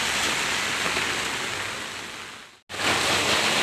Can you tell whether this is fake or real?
real